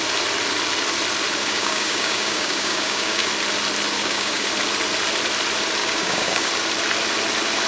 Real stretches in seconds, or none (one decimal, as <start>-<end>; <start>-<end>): 0.0-1.4; 3.3-4.0; 4.5-5.8; 6.5-7.7